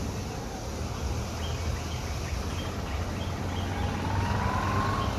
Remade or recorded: recorded